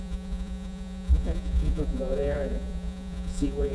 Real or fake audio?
fake